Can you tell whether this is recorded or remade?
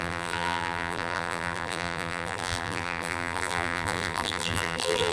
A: remade